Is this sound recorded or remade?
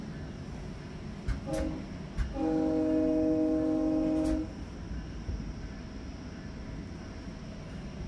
recorded